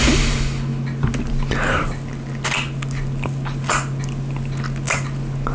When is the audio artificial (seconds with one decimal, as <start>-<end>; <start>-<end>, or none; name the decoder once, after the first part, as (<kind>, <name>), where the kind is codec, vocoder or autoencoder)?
none